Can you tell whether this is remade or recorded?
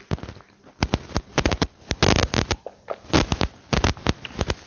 recorded